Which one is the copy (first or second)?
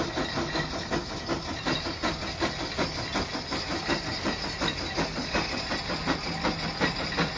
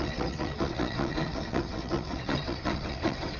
second